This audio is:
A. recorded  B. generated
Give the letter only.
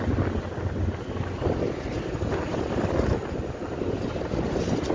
A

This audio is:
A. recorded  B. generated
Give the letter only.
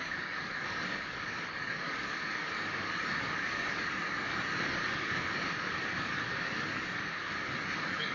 B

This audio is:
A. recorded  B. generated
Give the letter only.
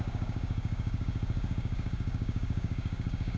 B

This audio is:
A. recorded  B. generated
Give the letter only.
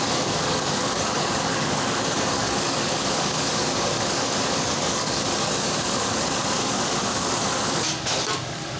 B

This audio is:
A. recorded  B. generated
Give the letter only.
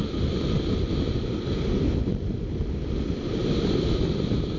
A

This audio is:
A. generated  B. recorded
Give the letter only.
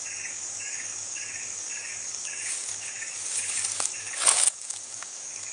A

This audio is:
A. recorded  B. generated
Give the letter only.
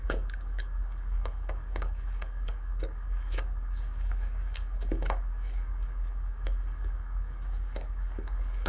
B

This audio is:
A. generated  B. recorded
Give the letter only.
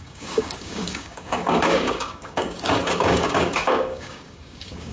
A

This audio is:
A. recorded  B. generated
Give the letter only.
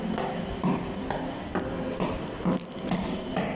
A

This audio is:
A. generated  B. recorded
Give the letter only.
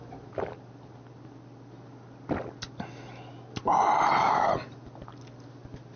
B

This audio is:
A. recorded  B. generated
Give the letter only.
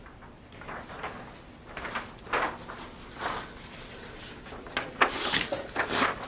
A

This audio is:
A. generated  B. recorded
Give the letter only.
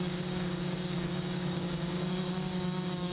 A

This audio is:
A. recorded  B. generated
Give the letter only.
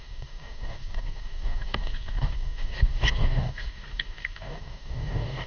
B